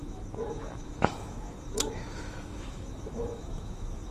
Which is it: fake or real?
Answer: fake